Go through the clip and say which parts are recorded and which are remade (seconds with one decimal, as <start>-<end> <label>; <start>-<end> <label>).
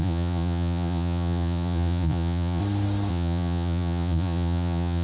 0.0-2.6 remade; 2.6-3.1 recorded; 3.1-5.0 remade